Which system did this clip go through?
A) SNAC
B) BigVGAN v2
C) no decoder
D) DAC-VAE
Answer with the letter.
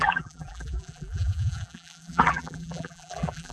B